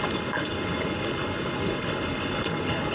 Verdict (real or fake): fake